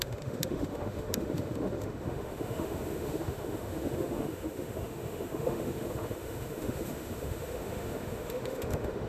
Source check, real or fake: fake